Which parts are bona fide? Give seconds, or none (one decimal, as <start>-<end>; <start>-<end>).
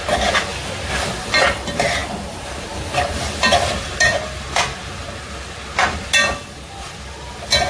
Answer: 0.0-7.7